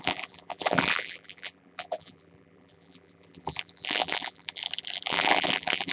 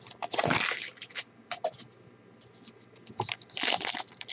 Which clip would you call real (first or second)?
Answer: second